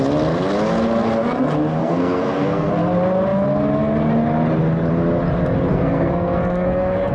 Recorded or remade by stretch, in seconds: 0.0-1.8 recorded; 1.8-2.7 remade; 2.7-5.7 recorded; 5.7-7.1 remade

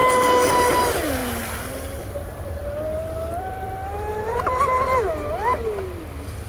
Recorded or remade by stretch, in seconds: 0.0-0.7 recorded; 0.7-2.6 remade; 2.6-6.5 recorded

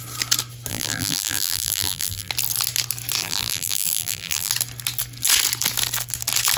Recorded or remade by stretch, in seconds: 0.0-0.7 recorded; 0.7-2.3 remade; 2.3-3.2 recorded; 3.2-4.5 remade; 4.5-6.6 recorded

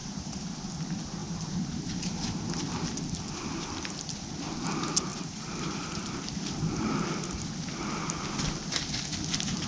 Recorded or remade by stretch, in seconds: 0.0-0.6 remade; 0.6-1.2 recorded; 1.2-2.4 remade; 2.4-5.1 recorded; 5.1-6.0 remade; 6.0-9.7 recorded